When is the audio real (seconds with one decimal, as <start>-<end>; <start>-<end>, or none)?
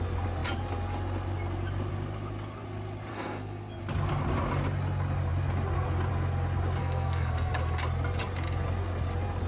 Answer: 0.0-3.1; 3.8-6.8; 7.5-9.5